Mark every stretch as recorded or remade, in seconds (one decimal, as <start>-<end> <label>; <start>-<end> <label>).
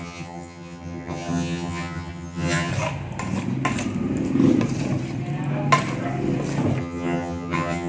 0.0-2.7 remade; 2.7-6.8 recorded; 6.8-7.9 remade